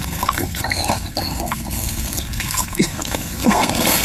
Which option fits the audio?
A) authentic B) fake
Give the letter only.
B